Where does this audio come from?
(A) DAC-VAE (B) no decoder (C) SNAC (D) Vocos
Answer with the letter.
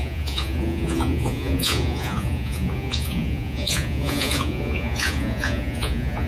D